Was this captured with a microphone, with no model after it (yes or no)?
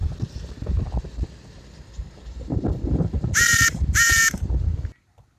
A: no